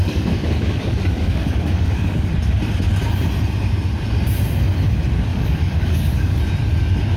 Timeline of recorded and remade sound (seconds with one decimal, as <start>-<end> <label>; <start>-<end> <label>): 0.0-2.3 remade; 2.3-5.3 recorded; 5.3-6.4 remade; 6.4-7.2 recorded